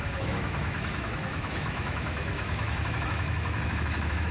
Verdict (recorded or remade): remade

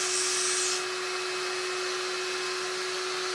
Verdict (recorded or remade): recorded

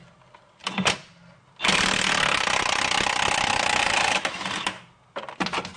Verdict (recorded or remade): recorded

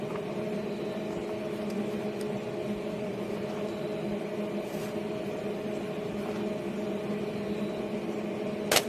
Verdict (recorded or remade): recorded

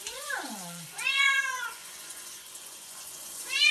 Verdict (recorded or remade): remade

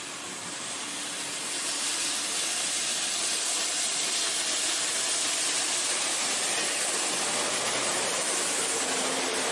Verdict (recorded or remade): recorded